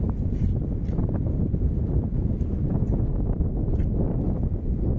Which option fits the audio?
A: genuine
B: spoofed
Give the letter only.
A